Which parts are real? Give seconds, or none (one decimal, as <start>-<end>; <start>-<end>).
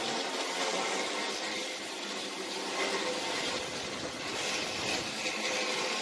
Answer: 0.0-6.0